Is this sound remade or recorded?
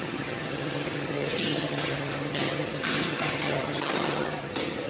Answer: remade